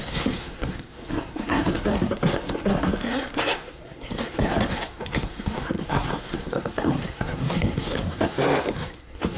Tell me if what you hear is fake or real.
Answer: fake